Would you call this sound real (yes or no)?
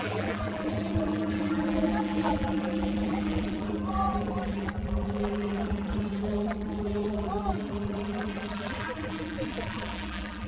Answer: no